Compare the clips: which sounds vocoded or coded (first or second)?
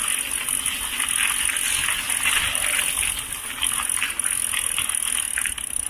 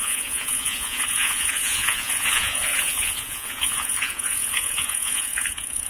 second